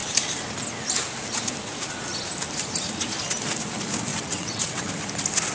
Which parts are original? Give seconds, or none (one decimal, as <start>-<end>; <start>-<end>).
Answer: 0.0-4.1; 4.9-5.5